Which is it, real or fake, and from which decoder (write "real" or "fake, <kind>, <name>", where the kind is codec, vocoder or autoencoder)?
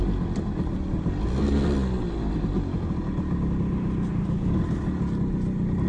real